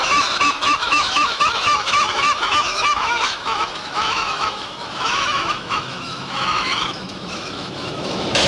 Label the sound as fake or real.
fake